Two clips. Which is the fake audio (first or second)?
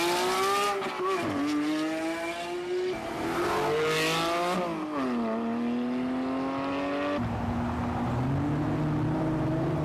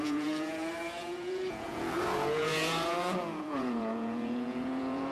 second